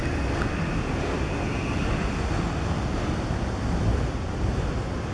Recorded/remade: recorded